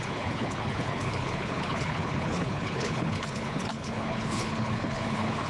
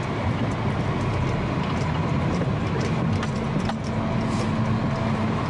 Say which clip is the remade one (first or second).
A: first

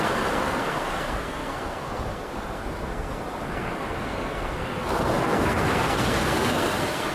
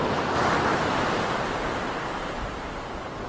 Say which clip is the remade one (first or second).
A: first